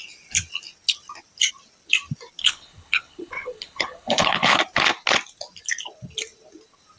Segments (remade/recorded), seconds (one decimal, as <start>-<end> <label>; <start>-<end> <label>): 0.0-2.4 recorded; 2.4-4.6 remade; 4.6-7.0 recorded